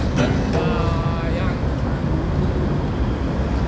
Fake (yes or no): no